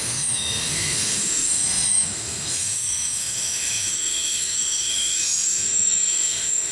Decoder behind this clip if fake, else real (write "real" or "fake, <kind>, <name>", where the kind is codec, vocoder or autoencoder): fake, autoencoder, DAC-VAE